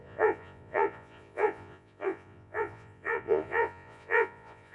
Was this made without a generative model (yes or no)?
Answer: no